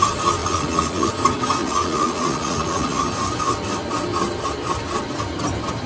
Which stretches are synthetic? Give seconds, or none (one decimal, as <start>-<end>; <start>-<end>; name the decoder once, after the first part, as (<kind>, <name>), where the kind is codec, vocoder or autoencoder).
0.4-1.1 (vocoder, Vocos); 1.6-3.0